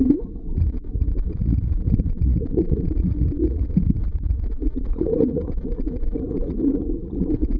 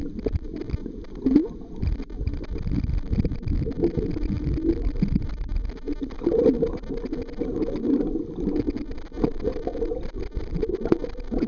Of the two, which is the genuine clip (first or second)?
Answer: second